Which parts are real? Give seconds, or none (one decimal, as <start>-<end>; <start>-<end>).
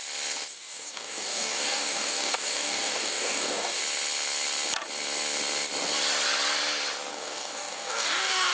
0.0-0.5; 3.8-7.1